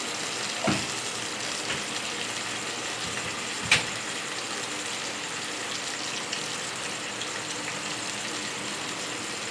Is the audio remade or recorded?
recorded